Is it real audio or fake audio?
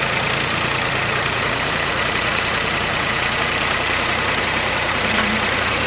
fake